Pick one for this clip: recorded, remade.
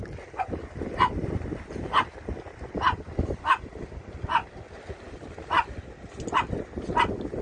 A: recorded